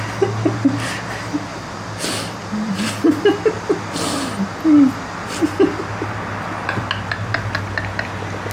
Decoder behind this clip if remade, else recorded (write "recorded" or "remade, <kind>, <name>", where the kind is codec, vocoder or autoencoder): recorded